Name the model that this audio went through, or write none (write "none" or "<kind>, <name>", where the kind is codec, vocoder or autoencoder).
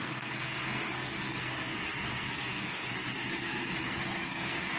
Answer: codec, SNAC